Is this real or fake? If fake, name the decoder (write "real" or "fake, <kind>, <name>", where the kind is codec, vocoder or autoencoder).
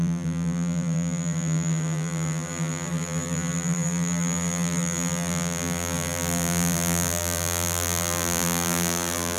fake, vocoder, BigVGAN v2